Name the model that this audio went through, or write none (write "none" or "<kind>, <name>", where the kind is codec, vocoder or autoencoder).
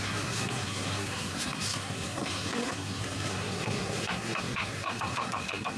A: codec, SNAC